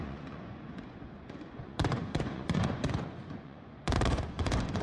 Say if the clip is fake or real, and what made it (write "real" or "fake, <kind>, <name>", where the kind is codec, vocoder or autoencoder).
fake, vocoder, Vocos